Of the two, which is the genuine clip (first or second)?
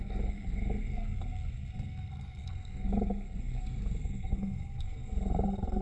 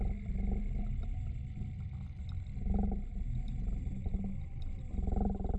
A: second